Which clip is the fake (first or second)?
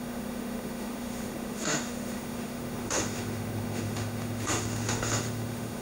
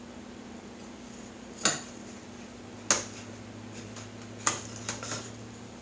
first